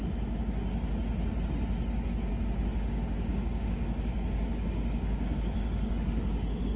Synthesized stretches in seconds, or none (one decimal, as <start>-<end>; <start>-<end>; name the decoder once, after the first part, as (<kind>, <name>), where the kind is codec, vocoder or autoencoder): 2.3-6.8 (codec, DAC)